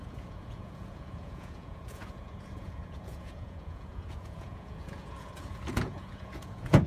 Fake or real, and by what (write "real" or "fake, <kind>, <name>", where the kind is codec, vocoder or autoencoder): fake, vocoder, Vocos